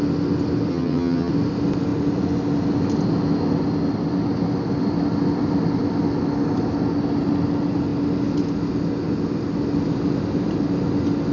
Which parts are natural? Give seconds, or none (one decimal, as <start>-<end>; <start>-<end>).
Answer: 0.0-0.7; 1.3-11.3